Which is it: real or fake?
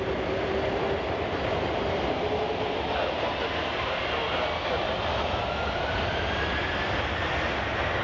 real